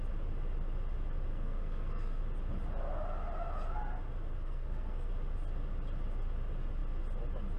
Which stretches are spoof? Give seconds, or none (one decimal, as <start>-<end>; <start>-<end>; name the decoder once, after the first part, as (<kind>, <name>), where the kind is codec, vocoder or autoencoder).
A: 1.3-2.2 (codec, SNAC); 4.3-5.1